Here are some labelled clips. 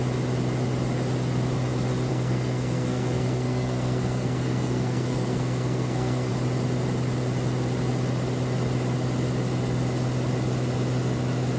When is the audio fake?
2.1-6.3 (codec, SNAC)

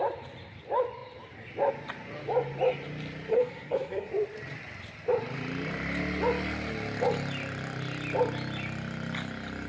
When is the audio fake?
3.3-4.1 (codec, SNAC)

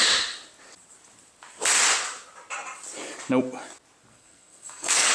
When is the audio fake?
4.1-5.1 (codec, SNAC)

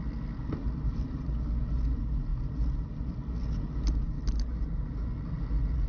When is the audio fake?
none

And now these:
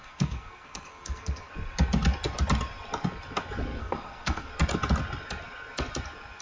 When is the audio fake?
0.0-1.5 (codec, SNAC); 3.8-4.5